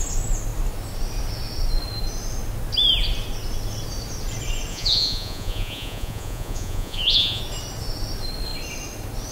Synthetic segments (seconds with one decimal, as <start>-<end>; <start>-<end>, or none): 4.7-7.4